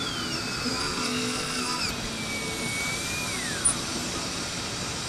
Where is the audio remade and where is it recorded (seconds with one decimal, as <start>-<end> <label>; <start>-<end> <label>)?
0.0-0.8 recorded; 0.8-1.8 remade; 1.8-5.1 recorded